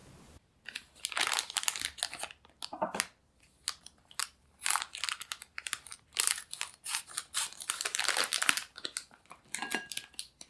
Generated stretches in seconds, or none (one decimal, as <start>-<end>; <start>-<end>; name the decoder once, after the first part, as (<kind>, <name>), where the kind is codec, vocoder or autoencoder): 4.2-5.0 (vocoder, BigVGAN v2); 5.9-9.4